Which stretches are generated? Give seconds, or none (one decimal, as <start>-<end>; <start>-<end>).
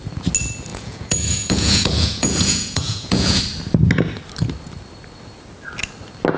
0.7-3.4